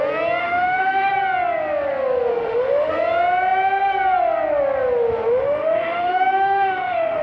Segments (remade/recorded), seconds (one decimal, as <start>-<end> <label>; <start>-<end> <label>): 0.0-0.4 recorded; 0.4-1.1 remade; 1.1-2.3 recorded; 2.3-2.9 remade; 2.9-5.3 recorded; 5.3-7.2 remade